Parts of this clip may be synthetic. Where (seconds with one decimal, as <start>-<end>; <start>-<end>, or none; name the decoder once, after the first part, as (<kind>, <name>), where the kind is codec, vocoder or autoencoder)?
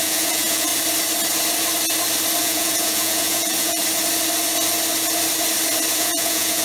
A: 0.0-0.7 (vocoder, Vocos); 2.4-3.8; 5.9-6.6